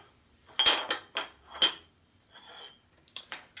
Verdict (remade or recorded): recorded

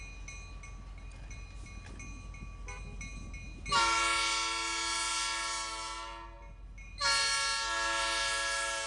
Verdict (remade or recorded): recorded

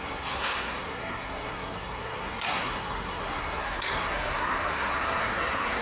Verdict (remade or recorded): remade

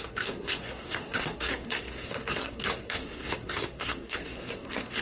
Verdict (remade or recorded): remade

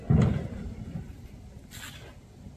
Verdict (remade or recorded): recorded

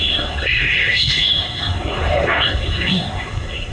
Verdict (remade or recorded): remade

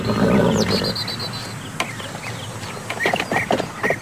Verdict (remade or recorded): recorded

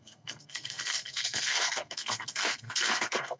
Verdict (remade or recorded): remade